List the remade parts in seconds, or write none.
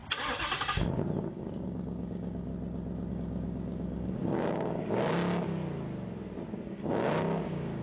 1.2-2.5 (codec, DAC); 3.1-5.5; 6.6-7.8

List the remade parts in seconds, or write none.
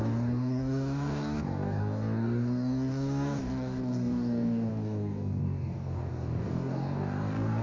0.0-7.6 (codec, DAC)